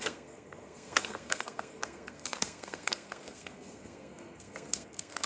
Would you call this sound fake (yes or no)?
yes